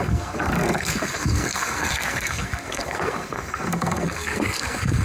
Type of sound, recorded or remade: remade